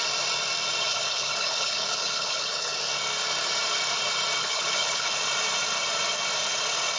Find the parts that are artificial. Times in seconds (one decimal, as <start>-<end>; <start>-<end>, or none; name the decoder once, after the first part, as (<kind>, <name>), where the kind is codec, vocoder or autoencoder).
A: 0.9-2.8 (codec, HILCodec); 4.4-5.2